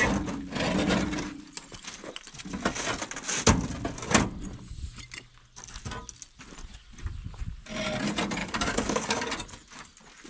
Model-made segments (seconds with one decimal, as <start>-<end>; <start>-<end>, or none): 8.4-9.3